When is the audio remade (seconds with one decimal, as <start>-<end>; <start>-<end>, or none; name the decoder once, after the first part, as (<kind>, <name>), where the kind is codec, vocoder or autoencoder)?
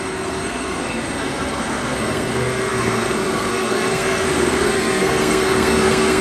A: 0.0-6.2 (codec, SNAC)